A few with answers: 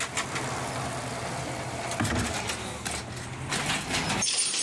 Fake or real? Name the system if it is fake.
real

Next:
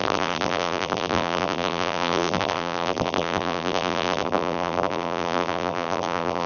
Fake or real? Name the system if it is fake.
fake, vocoder, BigVGAN v2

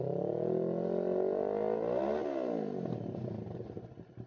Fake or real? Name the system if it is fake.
real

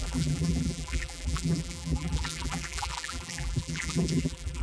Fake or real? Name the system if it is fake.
fake, vocoder, BigVGAN v2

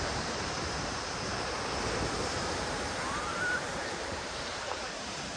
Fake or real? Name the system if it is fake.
fake, vocoder, BigVGAN v2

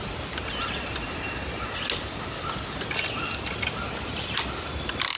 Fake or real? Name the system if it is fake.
real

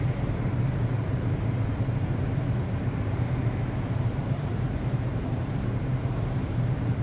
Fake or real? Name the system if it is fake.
fake, vocoder, BigVGAN v2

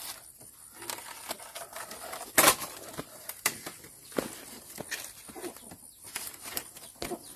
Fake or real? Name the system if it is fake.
real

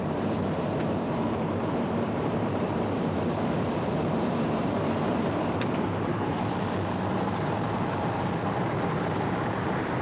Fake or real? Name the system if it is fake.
fake, vocoder, BigVGAN v2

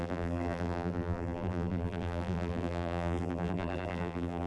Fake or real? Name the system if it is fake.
fake, vocoder, BigVGAN v2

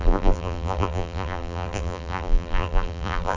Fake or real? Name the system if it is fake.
fake, vocoder, BigVGAN v2